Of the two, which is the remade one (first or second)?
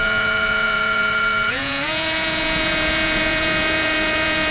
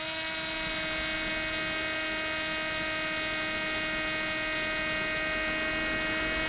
first